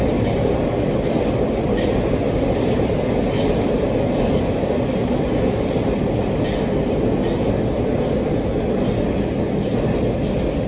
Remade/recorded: recorded